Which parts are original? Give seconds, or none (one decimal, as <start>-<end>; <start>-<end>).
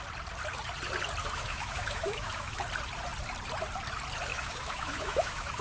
0.0-1.2; 2.6-4.3